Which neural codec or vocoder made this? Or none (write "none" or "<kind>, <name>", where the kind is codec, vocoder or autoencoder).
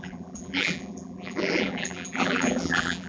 vocoder, BigVGAN v2